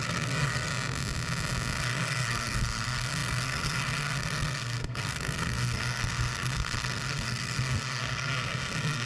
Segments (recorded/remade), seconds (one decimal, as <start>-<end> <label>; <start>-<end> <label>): 0.0-0.7 remade; 0.7-1.8 recorded; 1.8-9.1 remade